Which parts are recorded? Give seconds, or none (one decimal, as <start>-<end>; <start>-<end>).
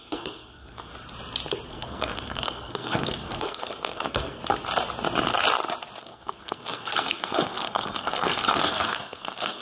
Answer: 0.9-1.7; 4.4-6.0